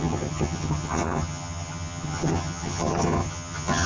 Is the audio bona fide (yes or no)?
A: no